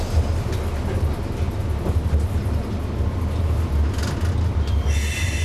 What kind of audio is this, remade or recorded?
recorded